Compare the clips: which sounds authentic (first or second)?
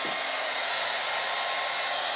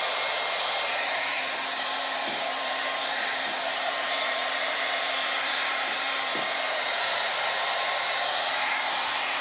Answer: first